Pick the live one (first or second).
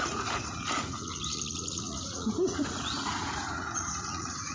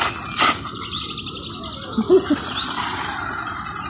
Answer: second